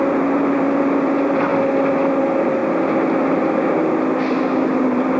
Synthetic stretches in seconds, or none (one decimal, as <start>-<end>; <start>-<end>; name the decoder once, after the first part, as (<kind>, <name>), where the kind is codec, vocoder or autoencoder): 0.0-1.5 (vocoder, BigVGAN v2); 2.2-2.6; 4.7-5.2